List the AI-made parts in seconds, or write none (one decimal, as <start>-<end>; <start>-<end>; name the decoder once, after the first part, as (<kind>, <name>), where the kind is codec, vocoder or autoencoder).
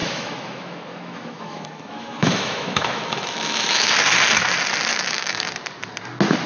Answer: 0.0-3.9 (autoencoder, DAC-VAE); 4.9-5.5